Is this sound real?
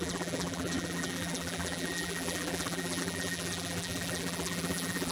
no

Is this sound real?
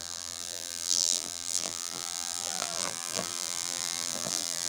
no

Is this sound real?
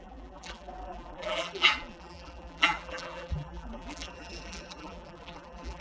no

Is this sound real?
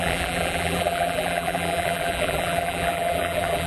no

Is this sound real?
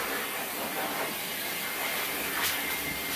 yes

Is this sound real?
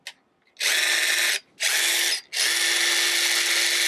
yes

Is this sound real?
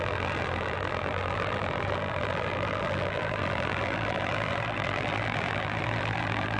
no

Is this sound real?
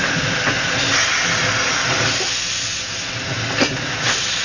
yes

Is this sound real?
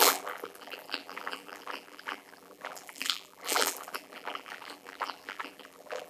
no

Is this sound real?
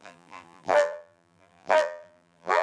no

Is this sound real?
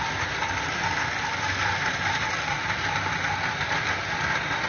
yes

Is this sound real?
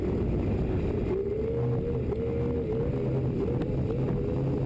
yes